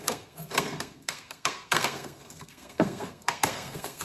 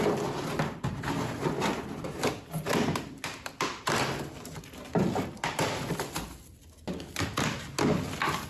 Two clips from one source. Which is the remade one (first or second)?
first